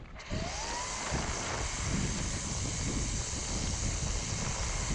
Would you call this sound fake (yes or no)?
no